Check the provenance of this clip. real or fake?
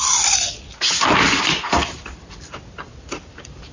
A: fake